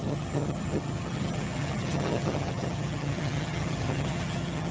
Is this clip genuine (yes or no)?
no